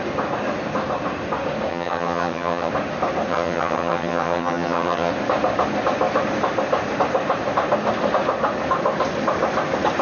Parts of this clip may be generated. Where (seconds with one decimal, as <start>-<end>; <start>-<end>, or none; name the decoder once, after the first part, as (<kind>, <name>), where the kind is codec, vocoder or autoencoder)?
1.7-2.7 (vocoder, HiFi-GAN); 3.3-5.1